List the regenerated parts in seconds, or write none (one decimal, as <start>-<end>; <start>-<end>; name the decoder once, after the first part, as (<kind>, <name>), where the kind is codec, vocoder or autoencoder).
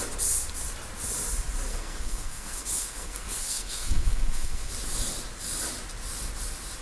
1.7-4.7 (codec, SNAC)